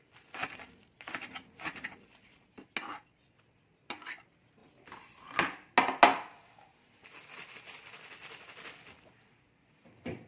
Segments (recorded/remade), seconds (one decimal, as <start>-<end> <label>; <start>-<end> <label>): 0.0-0.4 recorded; 0.4-2.5 remade; 2.5-10.3 recorded